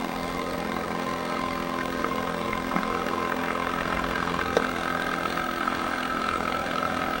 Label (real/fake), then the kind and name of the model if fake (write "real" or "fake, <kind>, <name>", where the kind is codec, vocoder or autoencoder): fake, codec, SNAC